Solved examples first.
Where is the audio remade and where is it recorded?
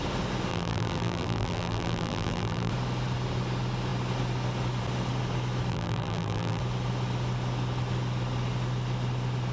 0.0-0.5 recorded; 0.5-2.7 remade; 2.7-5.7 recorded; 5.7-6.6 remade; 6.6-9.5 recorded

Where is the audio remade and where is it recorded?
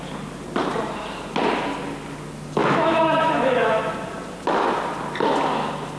0.0-2.6 recorded; 2.6-3.9 remade; 3.9-6.0 recorded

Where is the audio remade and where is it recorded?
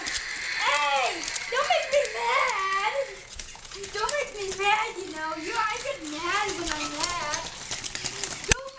0.0-3.2 recorded; 3.2-4.3 remade; 4.3-8.8 recorded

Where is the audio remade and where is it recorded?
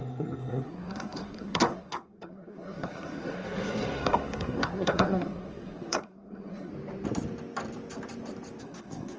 0.0-6.7 remade; 6.7-8.6 recorded; 8.6-9.2 remade